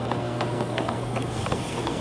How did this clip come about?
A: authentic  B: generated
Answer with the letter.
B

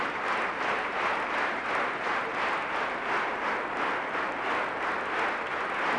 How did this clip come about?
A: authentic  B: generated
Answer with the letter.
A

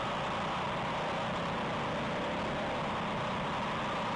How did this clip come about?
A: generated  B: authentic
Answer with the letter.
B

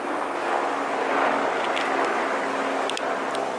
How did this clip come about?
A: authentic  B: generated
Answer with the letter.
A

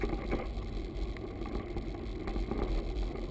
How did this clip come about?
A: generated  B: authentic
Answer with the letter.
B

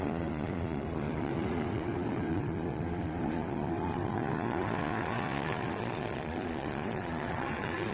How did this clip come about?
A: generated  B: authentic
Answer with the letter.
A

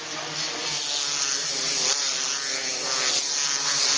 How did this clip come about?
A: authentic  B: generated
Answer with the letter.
A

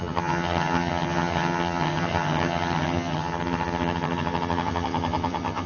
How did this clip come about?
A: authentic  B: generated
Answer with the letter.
B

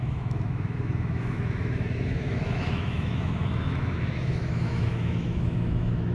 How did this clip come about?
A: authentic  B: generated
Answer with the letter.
B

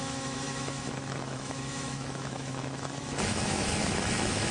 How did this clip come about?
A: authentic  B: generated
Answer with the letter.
B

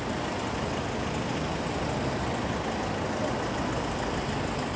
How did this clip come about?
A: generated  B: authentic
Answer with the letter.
B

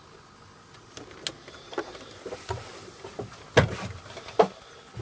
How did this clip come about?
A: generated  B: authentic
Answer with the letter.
B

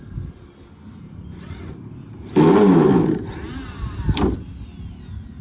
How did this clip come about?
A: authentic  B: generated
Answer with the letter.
A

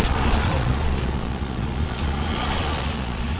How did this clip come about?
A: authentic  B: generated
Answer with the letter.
B